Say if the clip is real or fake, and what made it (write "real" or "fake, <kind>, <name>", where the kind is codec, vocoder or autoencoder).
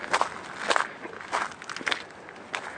real